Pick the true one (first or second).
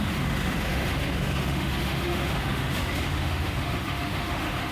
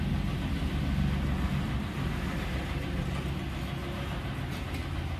second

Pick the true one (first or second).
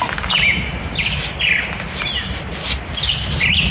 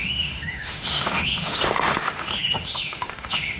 first